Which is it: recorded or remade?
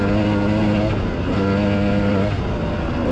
recorded